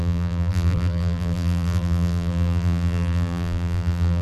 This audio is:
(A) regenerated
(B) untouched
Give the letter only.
A